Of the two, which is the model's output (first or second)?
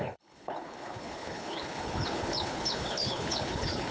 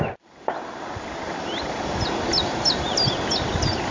first